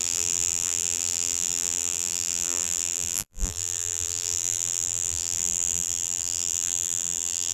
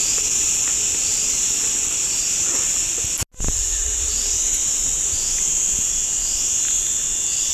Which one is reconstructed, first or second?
first